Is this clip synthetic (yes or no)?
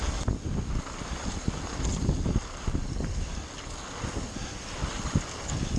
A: no